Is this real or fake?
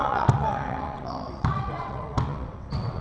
fake